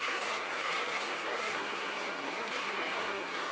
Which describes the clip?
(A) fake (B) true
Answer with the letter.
A